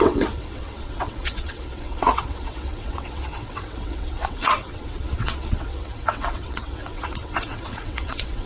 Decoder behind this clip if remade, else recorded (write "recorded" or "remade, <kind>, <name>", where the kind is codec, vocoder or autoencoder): remade, vocoder, WaveNeXt